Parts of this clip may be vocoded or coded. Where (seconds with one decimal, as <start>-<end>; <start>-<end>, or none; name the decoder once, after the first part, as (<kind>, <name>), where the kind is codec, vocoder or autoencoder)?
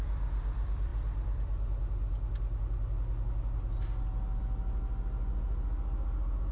none